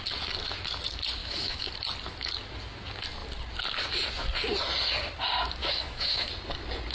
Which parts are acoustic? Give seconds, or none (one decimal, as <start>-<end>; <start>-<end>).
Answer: 0.0-1.2; 1.7-5.6; 6.3-6.9